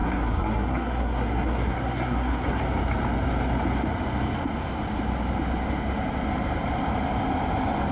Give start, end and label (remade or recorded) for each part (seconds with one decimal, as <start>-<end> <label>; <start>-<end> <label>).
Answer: 0.0-2.6 remade; 2.6-7.9 recorded